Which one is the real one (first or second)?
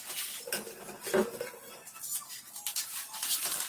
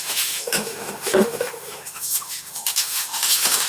first